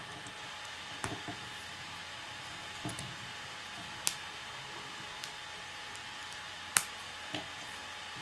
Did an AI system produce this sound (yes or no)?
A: no